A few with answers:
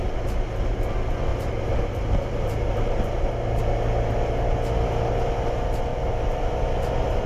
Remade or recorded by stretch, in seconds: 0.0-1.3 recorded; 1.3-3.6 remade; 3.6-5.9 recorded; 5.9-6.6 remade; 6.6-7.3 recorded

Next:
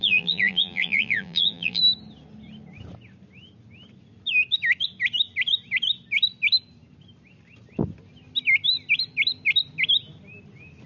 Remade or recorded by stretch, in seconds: 0.0-1.8 remade; 1.8-10.9 recorded

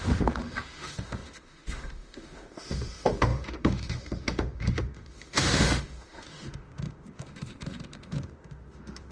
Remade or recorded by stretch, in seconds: 0.0-9.1 remade